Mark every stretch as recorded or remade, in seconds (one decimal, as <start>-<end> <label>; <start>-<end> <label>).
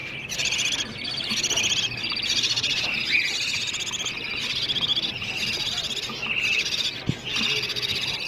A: 0.0-8.3 recorded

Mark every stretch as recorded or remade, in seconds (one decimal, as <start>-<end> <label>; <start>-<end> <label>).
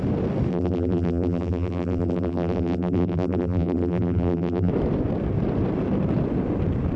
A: 0.0-0.5 recorded; 0.5-4.7 remade; 4.7-7.0 recorded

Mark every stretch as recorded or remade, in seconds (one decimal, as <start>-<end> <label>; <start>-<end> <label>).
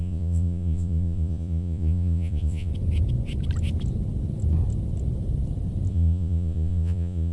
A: 0.0-2.7 remade; 2.7-5.9 recorded; 5.9-7.3 remade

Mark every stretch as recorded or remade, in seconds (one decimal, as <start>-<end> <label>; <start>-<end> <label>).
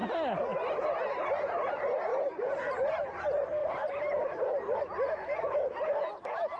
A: 0.0-2.1 recorded; 2.1-3.1 remade; 3.1-3.6 recorded; 3.6-4.8 remade; 4.8-6.6 recorded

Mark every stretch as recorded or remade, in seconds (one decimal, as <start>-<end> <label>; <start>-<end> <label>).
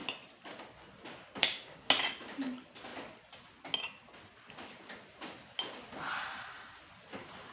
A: 0.0-1.4 recorded; 1.4-1.9 remade; 1.9-7.5 recorded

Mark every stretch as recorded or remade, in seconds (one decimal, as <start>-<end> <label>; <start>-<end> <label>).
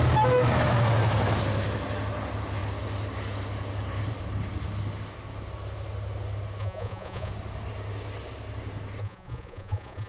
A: 0.0-6.6 recorded; 6.6-7.3 remade; 7.3-9.0 recorded; 9.0-10.1 remade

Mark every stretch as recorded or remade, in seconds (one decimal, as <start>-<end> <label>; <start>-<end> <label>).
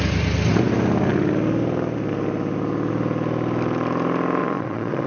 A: 0.0-4.4 recorded; 4.4-5.1 remade